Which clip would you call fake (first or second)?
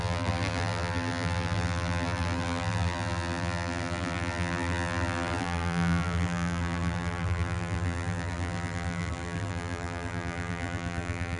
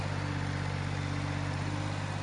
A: first